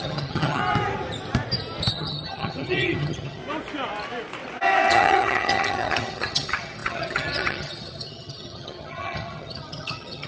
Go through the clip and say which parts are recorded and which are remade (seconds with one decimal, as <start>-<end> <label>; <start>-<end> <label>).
0.0-0.6 remade; 0.6-1.9 recorded; 1.9-3.4 remade; 3.4-4.9 recorded; 4.9-10.3 remade